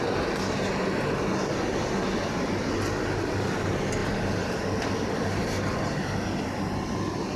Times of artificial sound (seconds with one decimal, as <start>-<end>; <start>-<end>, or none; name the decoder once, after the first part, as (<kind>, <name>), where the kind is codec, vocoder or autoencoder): none